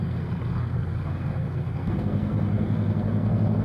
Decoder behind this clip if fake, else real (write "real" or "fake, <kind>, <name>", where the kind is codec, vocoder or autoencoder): fake, codec, SNAC